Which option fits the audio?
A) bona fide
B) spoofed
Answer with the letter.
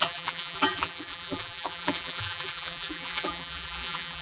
B